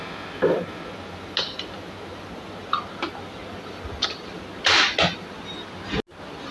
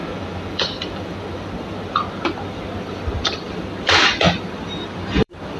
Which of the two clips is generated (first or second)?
second